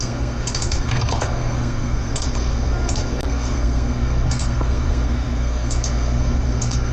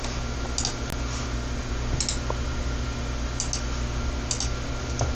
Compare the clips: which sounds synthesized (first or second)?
first